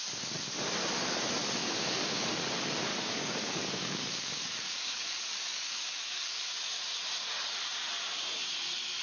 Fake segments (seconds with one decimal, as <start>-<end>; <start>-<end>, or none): 1.6-2.3; 2.9-6.5